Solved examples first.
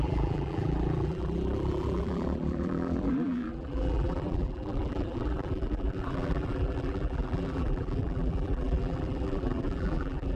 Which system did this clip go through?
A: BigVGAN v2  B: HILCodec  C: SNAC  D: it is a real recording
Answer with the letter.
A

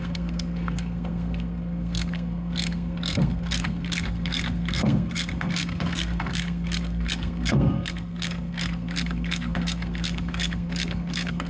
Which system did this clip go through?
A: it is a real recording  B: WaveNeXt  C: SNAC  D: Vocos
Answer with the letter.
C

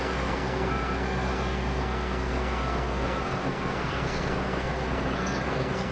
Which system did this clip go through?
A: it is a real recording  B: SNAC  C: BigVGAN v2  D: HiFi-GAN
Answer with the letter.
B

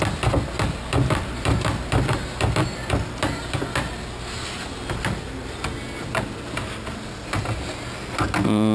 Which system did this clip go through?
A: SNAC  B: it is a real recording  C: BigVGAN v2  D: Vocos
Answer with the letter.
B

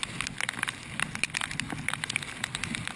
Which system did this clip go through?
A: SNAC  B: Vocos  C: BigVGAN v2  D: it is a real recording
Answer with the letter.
D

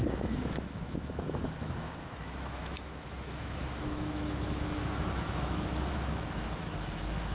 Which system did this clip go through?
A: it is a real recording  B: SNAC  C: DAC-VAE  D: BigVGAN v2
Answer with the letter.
C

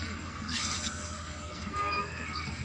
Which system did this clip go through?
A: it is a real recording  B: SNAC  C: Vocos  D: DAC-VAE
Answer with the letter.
B